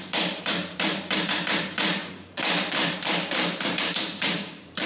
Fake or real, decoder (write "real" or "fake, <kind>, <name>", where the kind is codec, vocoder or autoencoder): fake, vocoder, BigVGAN v2